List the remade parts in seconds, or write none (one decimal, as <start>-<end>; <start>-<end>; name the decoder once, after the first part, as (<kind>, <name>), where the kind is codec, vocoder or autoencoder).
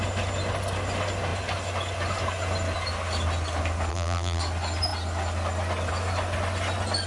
3.9-4.4 (vocoder, BigVGAN v2)